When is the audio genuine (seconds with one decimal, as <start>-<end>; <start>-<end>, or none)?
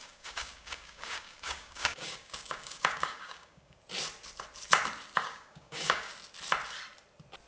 3.8-5.2; 6.1-7.5